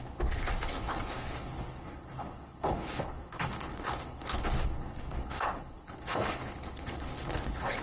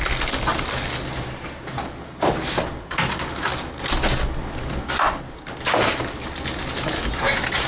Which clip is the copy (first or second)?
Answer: first